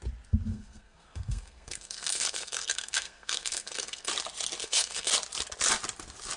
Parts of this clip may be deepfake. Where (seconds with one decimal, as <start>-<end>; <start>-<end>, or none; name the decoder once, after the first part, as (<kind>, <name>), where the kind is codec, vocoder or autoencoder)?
0.5-4.1 (codec, SNAC); 4.6-5.1